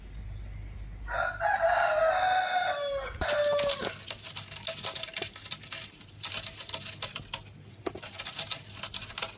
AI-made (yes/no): no